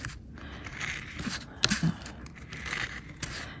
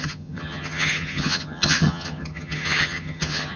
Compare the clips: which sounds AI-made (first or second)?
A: second